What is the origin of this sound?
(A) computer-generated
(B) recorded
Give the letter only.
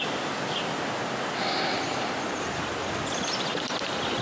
B